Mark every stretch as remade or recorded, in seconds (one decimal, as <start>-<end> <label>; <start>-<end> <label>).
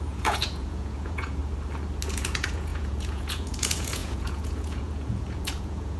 0.0-1.4 remade; 1.4-2.1 recorded; 2.1-6.0 remade